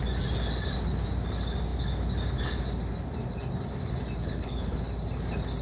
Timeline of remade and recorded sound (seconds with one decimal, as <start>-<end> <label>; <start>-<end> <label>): 0.0-4.2 recorded; 4.2-4.8 remade; 4.8-5.6 recorded